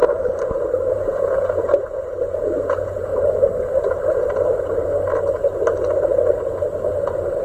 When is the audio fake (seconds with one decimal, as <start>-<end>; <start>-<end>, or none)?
0.9-3.1